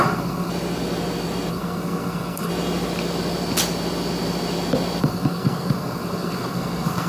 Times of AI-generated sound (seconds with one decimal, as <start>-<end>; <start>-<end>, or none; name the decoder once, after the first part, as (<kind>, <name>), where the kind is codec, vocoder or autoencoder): 0.0-0.5 (codec, SNAC); 1.5-2.5; 5.0-7.1